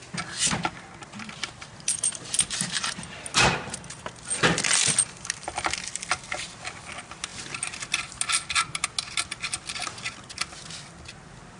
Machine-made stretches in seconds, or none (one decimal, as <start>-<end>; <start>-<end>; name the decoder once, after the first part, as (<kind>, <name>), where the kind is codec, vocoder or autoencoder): none